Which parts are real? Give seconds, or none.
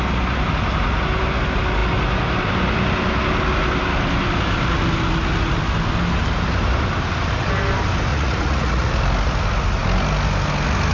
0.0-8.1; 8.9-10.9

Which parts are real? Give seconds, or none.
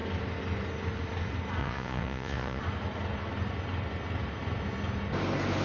0.0-1.6; 2.6-5.6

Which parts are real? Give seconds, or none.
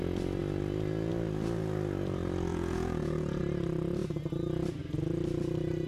0.0-2.5; 3.4-5.9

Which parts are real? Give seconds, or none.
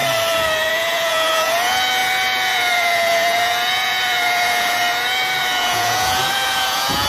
0.0-0.7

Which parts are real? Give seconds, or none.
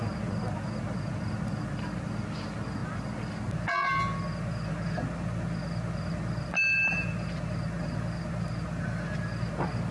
0.0-9.9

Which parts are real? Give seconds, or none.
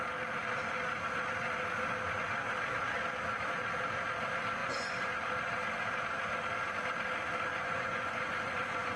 0.0-4.6; 5.1-7.5